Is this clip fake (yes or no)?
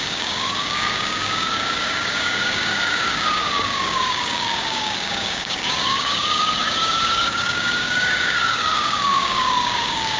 yes